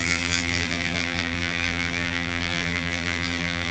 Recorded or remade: remade